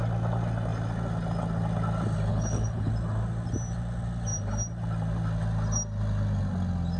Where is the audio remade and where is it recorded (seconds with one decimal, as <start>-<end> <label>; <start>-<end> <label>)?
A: 0.0-2.3 recorded; 2.3-2.9 remade; 2.9-7.0 recorded